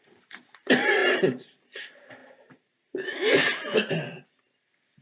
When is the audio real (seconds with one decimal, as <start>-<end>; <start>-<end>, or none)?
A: 0.0-5.0